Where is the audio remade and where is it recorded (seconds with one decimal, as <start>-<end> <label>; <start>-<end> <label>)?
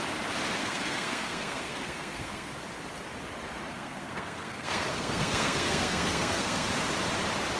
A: 0.0-0.6 recorded; 0.6-2.5 remade; 2.5-3.7 recorded; 3.7-6.7 remade; 6.7-7.6 recorded